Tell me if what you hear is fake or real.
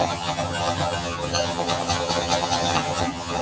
fake